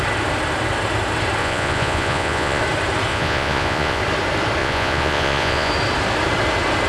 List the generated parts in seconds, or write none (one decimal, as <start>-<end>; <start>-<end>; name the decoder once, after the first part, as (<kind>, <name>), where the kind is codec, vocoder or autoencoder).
1.4-2.6 (vocoder, Vocos); 3.1-4.0; 4.6-5.7